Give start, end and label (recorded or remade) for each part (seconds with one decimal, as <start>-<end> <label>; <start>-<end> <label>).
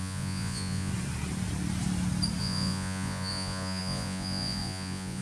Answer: 0.0-0.9 remade; 0.9-2.4 recorded; 2.4-5.2 remade